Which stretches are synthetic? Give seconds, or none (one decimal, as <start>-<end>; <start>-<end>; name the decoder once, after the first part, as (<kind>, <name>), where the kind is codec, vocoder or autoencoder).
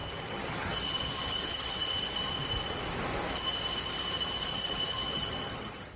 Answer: 0.0-2.0 (vocoder, HiFi-GAN); 4.5-6.0